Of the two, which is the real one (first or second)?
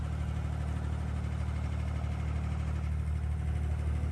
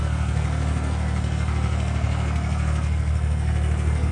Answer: first